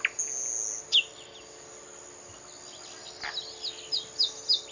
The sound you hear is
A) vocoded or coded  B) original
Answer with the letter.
B